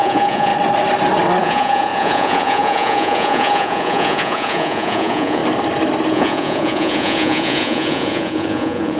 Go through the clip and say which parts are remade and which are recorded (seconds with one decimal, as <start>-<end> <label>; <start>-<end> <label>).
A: 0.0-0.5 remade; 0.5-1.4 recorded; 1.4-5.4 remade; 5.4-6.1 recorded; 6.1-9.0 remade